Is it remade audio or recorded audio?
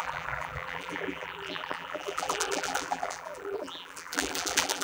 remade